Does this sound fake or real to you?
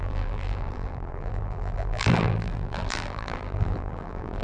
fake